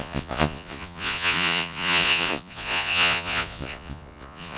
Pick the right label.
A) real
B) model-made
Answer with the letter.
B